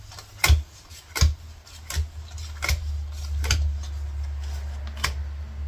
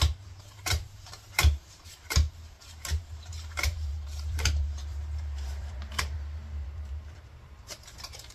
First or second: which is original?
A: first